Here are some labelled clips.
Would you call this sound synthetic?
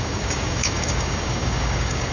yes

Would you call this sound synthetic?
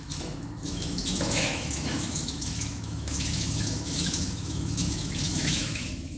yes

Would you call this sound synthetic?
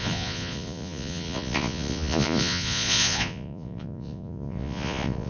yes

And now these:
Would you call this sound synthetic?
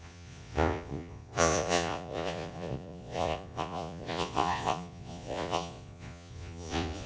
yes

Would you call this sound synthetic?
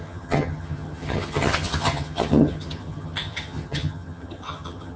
yes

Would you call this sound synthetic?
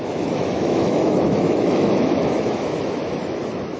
yes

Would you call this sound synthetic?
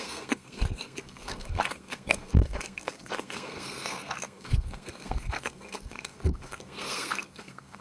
yes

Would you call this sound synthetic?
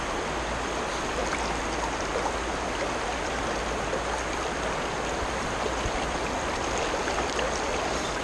no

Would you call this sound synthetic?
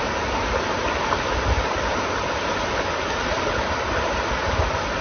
no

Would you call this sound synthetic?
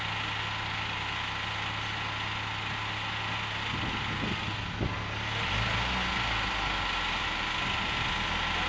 no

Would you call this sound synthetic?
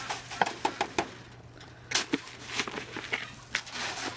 no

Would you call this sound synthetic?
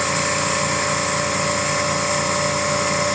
no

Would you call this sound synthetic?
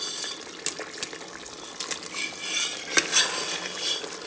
no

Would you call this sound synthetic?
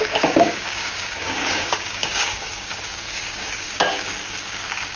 yes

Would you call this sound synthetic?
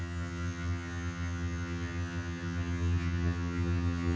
yes